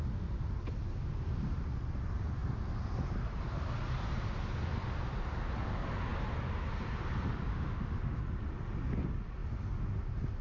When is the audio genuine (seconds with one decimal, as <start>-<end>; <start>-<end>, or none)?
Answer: 0.0-7.5; 8.2-10.4